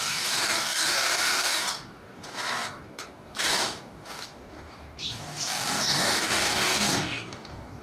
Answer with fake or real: fake